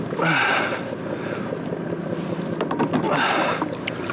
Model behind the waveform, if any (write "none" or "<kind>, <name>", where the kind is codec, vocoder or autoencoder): none